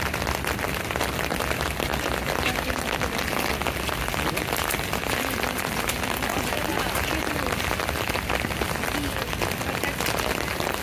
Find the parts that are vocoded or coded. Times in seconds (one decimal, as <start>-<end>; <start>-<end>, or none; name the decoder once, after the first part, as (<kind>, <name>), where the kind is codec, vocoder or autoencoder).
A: 6.3-7.5 (vocoder, BigVGAN v2)